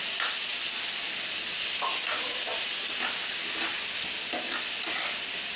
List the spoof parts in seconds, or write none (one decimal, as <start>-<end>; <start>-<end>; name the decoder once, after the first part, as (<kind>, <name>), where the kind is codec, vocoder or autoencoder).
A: none